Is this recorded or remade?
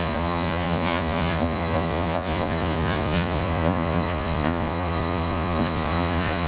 remade